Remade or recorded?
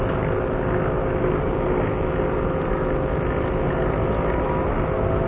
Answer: recorded